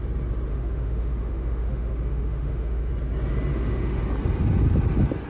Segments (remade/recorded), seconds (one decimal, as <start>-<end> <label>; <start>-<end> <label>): 0.0-0.5 recorded; 0.5-2.9 remade; 2.9-3.5 recorded; 3.5-4.0 remade; 4.0-5.3 recorded